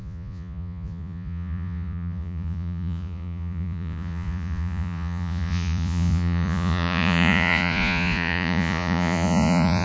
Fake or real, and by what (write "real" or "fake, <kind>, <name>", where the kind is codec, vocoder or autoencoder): fake, vocoder, Vocos